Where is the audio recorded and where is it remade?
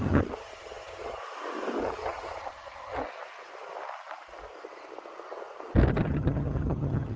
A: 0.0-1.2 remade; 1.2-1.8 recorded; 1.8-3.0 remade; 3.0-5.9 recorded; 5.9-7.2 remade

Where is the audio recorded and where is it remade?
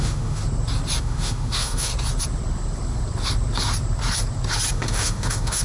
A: 0.0-0.4 remade; 0.4-1.0 recorded; 1.0-1.9 remade; 1.9-4.7 recorded; 4.7-5.6 remade